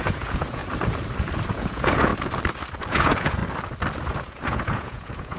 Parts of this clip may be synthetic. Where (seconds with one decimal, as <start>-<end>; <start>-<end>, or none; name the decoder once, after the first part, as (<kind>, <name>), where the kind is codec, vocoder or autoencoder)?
0.0-0.6 (vocoder, Vocos); 1.5-2.1; 2.9-3.4; 4.1-5.4